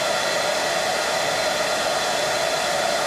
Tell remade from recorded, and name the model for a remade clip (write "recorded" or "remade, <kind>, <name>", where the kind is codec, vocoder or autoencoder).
remade, vocoder, BigVGAN v2